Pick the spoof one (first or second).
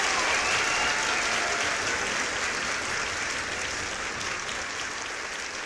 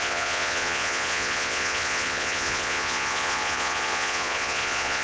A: second